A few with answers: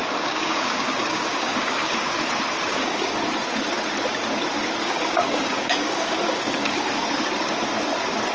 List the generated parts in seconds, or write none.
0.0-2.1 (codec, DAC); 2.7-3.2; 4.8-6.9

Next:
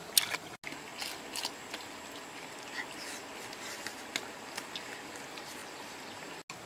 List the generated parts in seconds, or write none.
none

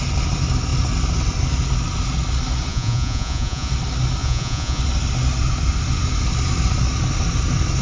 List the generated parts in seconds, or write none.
2.7-3.7 (vocoder, Vocos); 4.2-4.8

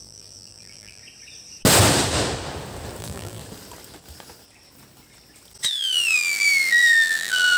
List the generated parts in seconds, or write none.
0.0-1.0 (vocoder, BigVGAN v2); 3.0-3.4; 5.7-7.6

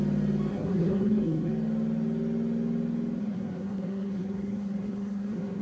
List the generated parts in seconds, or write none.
0.5-1.5 (codec, SNAC); 3.2-5.6

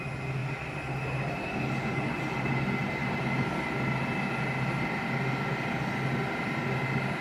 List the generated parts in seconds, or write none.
none

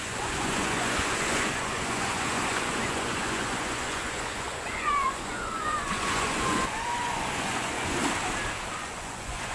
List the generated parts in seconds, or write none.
0.0-8.0 (vocoder, Vocos); 8.7-9.5